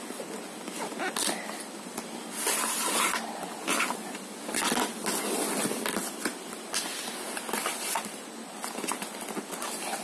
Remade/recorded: recorded